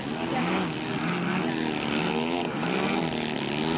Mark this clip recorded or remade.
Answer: recorded